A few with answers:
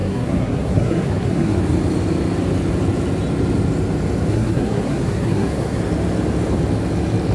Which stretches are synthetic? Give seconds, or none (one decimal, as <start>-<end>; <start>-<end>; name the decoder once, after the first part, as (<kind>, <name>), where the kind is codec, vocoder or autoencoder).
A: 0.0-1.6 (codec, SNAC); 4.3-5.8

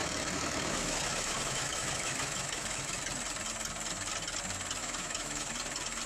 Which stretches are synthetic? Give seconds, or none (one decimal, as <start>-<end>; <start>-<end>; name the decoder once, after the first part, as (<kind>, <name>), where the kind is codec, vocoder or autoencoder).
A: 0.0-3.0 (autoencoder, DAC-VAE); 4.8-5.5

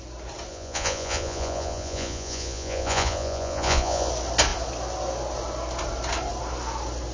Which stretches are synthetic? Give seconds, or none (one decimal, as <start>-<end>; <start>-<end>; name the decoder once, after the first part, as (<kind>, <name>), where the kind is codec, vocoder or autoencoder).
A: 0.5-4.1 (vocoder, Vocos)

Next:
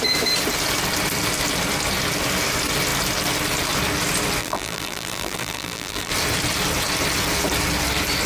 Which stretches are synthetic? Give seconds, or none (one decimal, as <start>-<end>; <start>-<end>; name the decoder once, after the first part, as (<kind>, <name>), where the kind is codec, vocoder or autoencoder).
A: 4.4-6.1 (vocoder, BigVGAN v2)